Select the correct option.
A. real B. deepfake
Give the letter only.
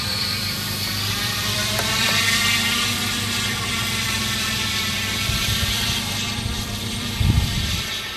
B